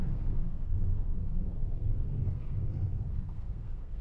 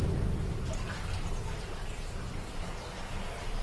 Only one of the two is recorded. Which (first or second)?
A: second